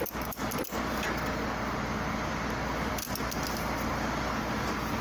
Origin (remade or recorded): recorded